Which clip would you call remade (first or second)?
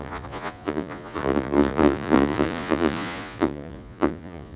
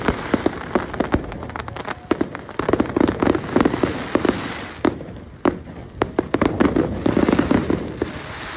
first